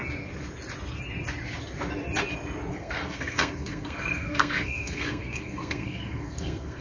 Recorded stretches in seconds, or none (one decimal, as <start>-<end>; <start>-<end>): 0.0-2.7

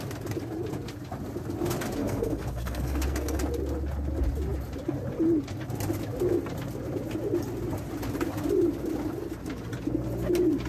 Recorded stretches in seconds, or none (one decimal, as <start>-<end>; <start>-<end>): 0.0-2.0; 3.4-10.7

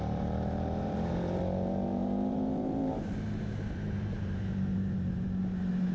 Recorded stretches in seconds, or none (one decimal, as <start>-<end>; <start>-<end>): none

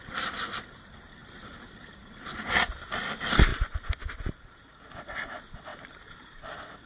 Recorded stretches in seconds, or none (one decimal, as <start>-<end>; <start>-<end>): 0.0-1.2; 2.6-5.7; 6.4-6.9